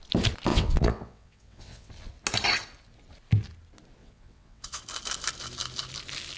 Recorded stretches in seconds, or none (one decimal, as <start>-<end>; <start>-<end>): 0.0-0.5; 1.9-4.0; 4.8-6.4